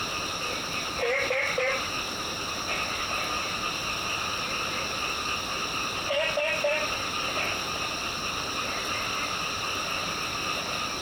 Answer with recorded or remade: recorded